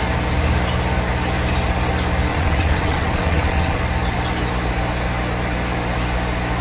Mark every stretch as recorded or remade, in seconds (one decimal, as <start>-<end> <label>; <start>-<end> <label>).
0.0-2.3 recorded; 2.3-3.8 remade; 3.8-6.6 recorded